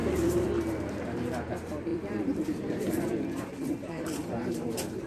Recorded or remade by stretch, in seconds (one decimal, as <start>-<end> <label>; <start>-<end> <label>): 0.0-0.5 remade; 0.5-1.9 recorded; 1.9-5.1 remade